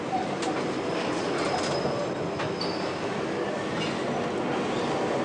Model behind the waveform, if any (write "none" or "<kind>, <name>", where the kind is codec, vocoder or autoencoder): none